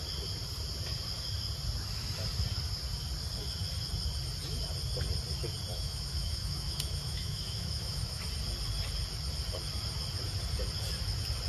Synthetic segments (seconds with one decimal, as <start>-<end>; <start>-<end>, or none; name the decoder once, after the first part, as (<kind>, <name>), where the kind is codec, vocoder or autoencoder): 5.7-8.2 (autoencoder, DAC-VAE)